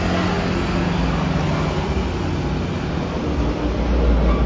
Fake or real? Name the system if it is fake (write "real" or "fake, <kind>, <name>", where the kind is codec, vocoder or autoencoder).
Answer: real